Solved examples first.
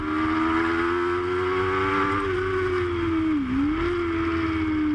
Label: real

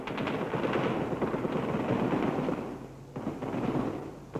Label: real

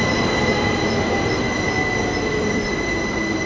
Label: real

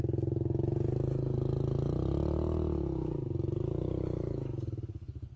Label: real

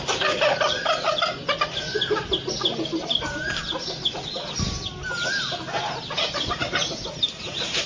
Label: real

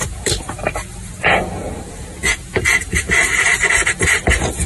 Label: real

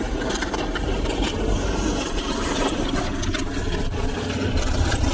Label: fake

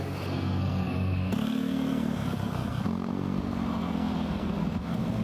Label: fake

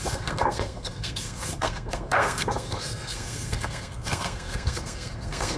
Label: fake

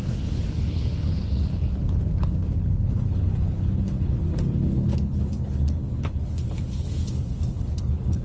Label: fake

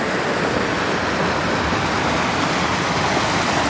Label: real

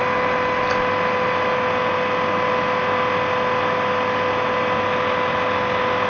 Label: real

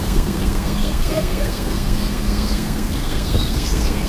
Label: fake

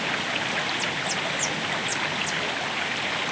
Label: real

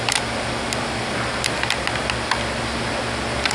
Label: real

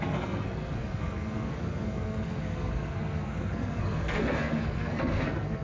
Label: fake